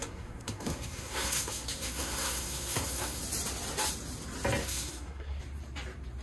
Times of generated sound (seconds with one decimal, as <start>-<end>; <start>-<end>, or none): 0.0-3.2; 4.6-5.4